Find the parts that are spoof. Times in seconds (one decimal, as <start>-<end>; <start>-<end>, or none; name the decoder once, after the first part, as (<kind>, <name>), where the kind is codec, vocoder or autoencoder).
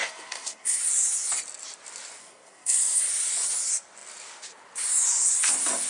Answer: 0.0-0.8 (codec, SNAC); 2.2-3.0